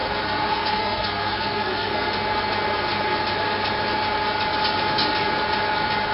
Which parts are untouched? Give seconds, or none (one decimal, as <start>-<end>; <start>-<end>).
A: 2.1-6.1